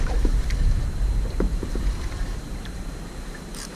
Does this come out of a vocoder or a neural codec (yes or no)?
yes